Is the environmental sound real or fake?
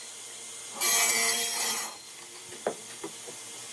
fake